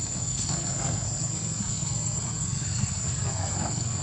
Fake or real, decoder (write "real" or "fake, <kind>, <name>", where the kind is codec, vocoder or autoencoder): fake, codec, SNAC